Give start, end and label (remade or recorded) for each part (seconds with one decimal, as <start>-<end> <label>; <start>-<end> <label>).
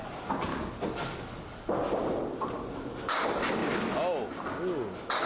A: 0.0-0.5 recorded; 0.5-1.6 remade; 1.6-5.3 recorded